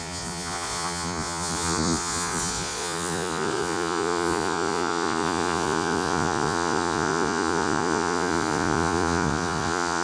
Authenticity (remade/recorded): remade